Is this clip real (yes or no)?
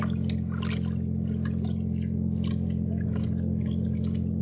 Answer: yes